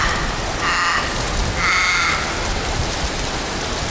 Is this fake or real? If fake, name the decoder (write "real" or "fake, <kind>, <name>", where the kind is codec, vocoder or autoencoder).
real